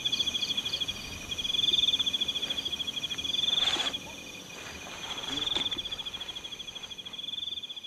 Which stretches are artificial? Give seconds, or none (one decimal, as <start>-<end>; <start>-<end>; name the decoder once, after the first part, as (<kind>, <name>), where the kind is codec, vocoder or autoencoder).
none